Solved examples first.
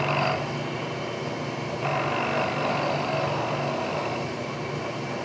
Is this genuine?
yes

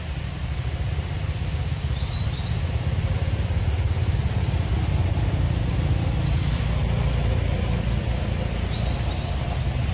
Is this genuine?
yes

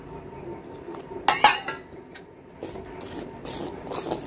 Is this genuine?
yes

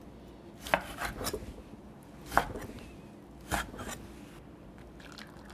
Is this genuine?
yes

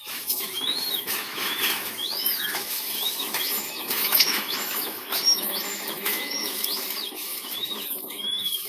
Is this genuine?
no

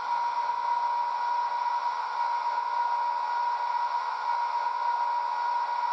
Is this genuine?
yes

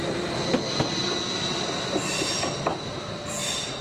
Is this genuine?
yes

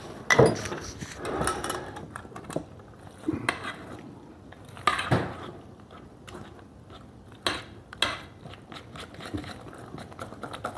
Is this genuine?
yes